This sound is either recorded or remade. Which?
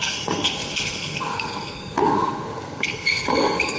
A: remade